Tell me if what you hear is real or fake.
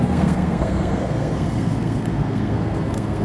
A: fake